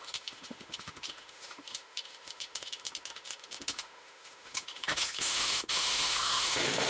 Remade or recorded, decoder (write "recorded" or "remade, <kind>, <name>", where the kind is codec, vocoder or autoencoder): remade, autoencoder, DAC-VAE